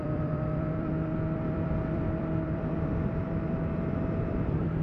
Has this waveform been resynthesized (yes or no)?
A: yes